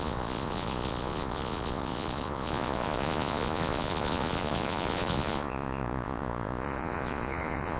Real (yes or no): no